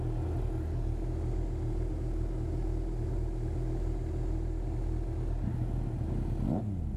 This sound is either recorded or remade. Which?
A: recorded